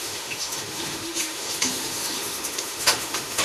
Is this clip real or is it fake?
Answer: fake